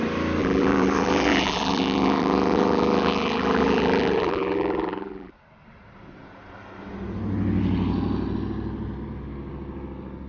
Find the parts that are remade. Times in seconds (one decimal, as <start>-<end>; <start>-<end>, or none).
0.4-5.3